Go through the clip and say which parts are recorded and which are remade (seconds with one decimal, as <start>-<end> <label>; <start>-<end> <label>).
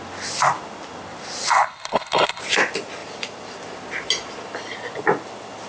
0.0-1.5 recorded; 1.5-2.4 remade; 2.4-5.7 recorded